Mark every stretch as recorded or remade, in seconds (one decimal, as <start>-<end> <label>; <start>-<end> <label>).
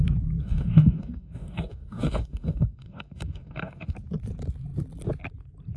0.0-0.4 recorded; 0.4-3.9 remade; 3.9-5.8 recorded